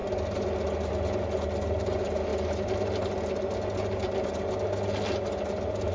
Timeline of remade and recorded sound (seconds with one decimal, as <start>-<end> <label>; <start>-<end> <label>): 0.0-5.9 recorded